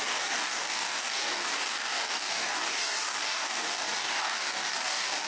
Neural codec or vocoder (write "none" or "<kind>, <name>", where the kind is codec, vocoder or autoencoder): codec, DAC